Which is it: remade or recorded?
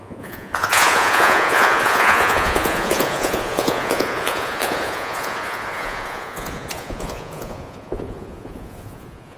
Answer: remade